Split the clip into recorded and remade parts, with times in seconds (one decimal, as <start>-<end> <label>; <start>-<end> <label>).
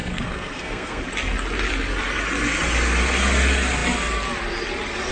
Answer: 0.0-1.0 remade; 1.0-5.1 recorded